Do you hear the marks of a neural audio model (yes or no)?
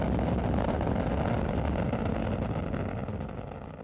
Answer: no